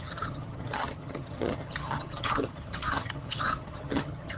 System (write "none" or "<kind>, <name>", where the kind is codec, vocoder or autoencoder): vocoder, HiFi-GAN